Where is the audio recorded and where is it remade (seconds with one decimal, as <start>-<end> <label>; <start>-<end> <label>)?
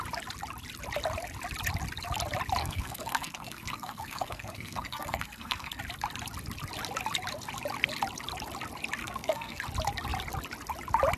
0.0-2.6 recorded; 2.6-5.8 remade; 5.8-9.0 recorded; 9.0-9.6 remade; 9.6-11.2 recorded